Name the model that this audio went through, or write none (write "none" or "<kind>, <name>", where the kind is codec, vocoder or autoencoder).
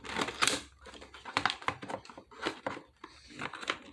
none